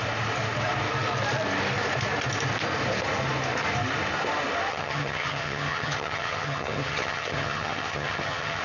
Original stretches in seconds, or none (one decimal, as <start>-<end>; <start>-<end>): 0.0-4.7